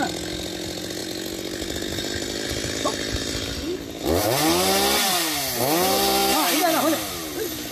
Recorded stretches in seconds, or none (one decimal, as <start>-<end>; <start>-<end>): 0.0-7.7